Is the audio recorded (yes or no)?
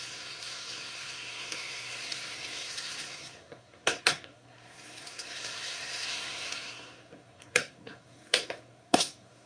no